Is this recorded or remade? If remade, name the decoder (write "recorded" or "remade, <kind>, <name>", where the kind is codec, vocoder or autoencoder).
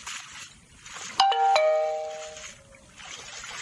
recorded